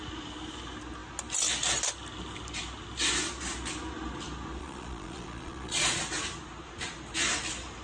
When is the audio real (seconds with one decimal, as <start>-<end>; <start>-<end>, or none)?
0.0-4.6; 6.0-7.8